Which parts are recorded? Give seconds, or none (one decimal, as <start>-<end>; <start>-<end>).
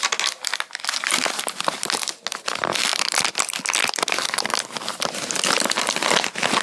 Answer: 0.0-2.9; 4.8-6.6